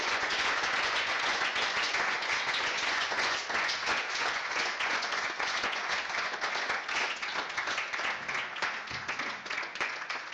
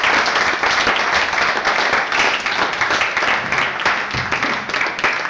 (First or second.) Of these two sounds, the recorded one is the second